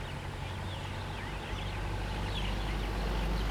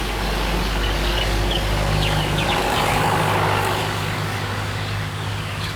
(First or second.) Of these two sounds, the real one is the first